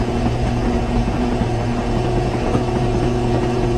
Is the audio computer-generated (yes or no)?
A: yes